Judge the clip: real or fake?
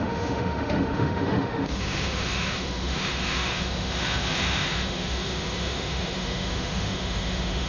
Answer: fake